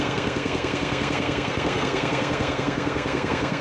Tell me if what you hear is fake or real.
fake